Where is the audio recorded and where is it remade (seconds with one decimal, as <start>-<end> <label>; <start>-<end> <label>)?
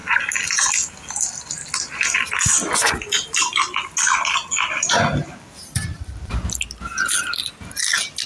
0.0-8.3 recorded